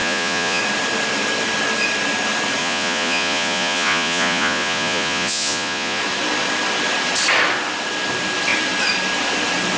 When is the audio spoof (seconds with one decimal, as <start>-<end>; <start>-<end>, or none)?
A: 0.0-0.6; 2.6-6.0